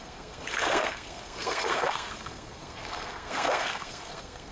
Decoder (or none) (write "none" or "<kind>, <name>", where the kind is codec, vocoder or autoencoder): codec, SNAC